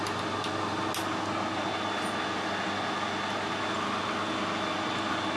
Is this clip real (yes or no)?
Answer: yes